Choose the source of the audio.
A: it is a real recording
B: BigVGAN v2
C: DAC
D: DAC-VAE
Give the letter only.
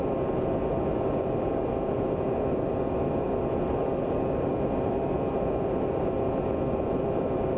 A